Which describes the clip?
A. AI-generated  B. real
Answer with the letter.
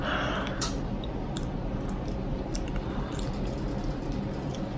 B